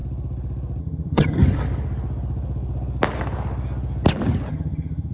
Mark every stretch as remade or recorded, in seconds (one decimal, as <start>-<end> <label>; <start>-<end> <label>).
0.0-0.8 recorded; 0.8-1.4 remade; 1.4-4.5 recorded; 4.5-5.1 remade